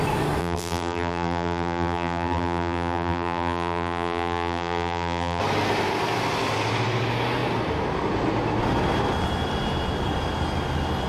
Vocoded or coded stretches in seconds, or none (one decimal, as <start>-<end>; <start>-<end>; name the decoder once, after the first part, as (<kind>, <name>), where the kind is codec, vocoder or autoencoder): 0.4-5.4 (vocoder, BigVGAN v2)

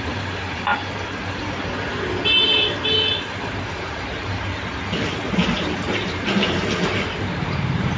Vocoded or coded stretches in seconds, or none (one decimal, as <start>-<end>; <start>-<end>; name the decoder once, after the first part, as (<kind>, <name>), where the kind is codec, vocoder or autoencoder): 0.0-0.7 (vocoder, BigVGAN v2); 3.4-4.5; 5.6-8.0

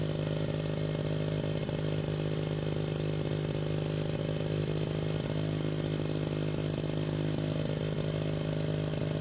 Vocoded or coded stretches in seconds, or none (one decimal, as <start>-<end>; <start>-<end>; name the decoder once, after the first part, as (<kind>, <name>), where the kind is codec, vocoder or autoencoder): none

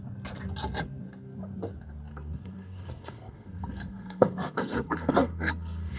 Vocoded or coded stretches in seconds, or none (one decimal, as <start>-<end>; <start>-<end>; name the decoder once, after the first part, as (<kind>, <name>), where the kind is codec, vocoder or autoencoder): 2.1-6.0 (codec, SNAC)